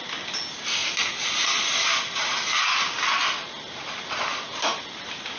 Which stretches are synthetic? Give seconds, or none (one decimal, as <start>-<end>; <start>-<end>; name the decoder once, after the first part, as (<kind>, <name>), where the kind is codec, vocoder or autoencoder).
none